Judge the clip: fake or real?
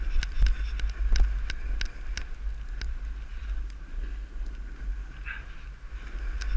real